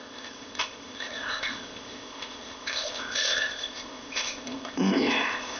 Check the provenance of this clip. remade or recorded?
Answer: remade